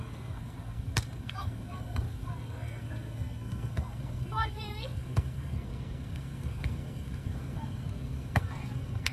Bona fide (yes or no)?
no